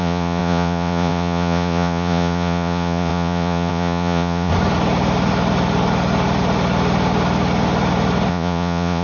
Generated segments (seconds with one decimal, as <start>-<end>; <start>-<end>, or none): 0.0-4.5; 8.3-9.0